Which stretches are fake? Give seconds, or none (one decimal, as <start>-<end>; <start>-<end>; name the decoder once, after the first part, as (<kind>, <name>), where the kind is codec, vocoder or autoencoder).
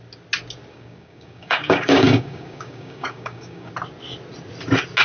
0.7-3.7 (codec, DAC)